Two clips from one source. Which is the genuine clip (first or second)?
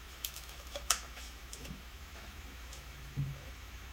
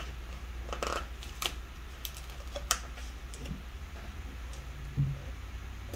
second